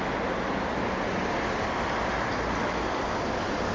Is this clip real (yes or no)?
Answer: yes